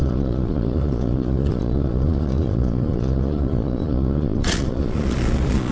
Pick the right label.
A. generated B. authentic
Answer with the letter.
A